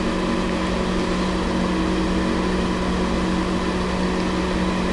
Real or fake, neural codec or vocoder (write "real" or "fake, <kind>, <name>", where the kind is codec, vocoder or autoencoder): real